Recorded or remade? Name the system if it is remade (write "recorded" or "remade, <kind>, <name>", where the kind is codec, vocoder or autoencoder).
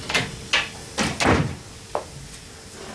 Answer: recorded